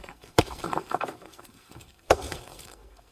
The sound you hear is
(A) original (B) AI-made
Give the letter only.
B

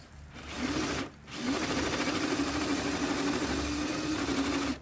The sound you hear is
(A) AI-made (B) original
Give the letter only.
B